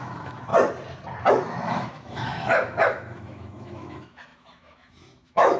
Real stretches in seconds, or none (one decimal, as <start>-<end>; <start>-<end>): 0.5-1.3